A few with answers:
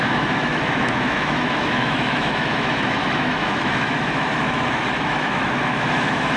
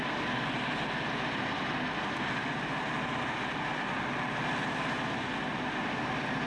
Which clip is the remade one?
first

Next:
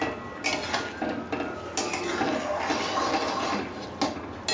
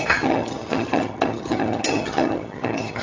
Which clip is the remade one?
second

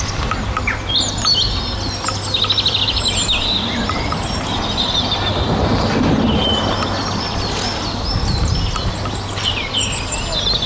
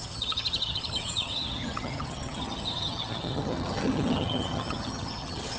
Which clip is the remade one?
second